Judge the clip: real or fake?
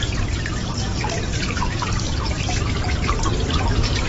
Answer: real